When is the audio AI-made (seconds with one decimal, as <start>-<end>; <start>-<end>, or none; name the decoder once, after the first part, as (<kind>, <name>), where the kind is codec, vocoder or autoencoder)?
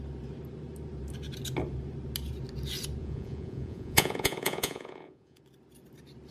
3.0-5.4 (vocoder, Vocos)